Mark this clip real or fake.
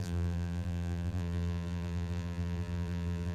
fake